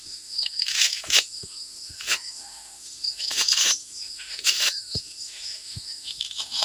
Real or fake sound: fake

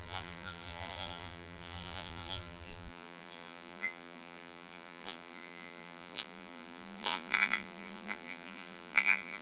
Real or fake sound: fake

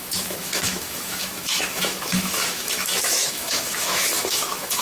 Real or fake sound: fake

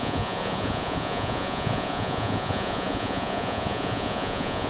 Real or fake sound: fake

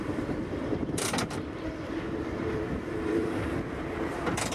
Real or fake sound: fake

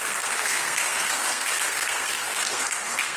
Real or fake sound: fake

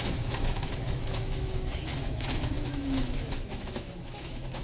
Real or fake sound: fake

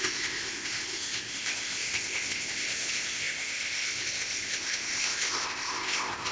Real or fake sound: fake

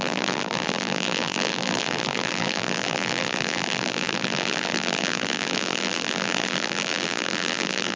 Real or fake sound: fake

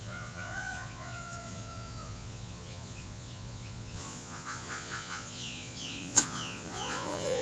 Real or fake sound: fake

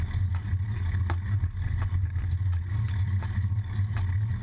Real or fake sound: real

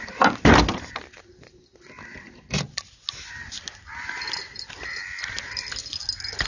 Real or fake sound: real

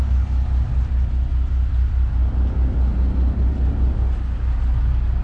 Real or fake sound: real